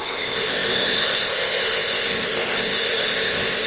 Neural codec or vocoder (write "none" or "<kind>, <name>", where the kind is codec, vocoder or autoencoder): codec, ZipCodec